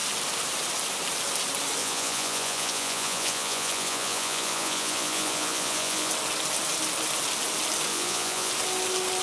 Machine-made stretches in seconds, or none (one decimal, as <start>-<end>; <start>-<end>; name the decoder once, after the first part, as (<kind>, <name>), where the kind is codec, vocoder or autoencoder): 1.8-6.1 (vocoder, Vocos); 7.9-8.5